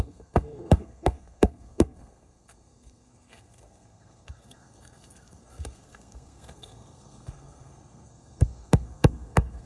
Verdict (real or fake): fake